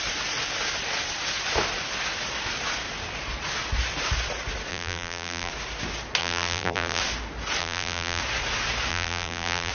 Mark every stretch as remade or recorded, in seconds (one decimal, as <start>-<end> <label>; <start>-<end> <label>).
0.0-4.7 recorded; 4.7-5.5 remade; 5.5-6.2 recorded; 6.2-7.0 remade; 7.0-7.6 recorded; 7.6-8.2 remade; 8.2-8.9 recorded; 8.9-9.7 remade